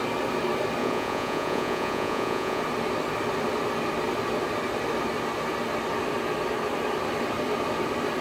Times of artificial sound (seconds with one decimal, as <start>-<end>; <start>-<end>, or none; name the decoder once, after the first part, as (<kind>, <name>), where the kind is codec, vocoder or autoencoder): 0.8-2.6 (vocoder, Vocos)